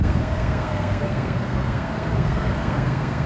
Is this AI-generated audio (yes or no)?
yes